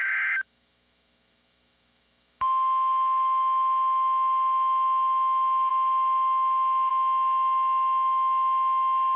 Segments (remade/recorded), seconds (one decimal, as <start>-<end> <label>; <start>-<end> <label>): 0.0-9.2 remade